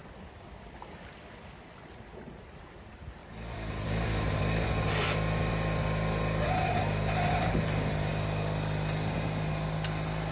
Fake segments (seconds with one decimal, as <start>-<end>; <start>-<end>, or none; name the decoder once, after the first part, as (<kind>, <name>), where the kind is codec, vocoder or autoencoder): 0.0-1.8 (vocoder, BigVGAN v2); 3.2-5.5; 6.7-7.5